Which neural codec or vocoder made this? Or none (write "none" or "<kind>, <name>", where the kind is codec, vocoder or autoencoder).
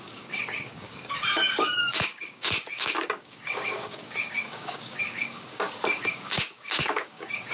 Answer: codec, DAC